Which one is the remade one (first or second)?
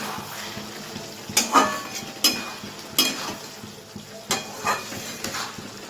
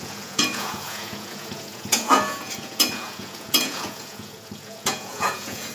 second